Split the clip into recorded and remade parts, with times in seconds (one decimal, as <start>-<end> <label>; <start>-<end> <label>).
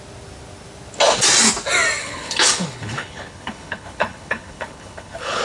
0.0-2.0 recorded; 2.0-5.4 remade